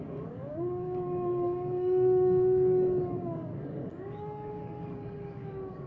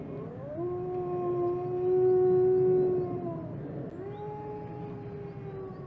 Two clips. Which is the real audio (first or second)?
second